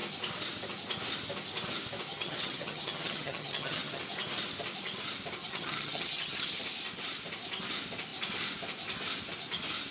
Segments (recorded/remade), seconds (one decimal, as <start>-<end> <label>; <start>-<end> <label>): 0.0-2.1 recorded; 2.1-4.0 remade; 4.0-5.4 recorded; 5.4-6.6 remade; 6.6-9.9 recorded